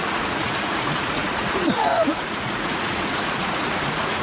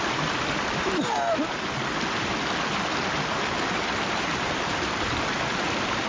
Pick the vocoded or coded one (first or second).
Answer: first